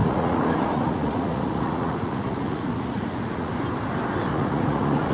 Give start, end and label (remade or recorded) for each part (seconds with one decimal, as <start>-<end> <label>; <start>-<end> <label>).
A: 0.0-3.5 remade; 3.5-4.3 recorded; 4.3-5.1 remade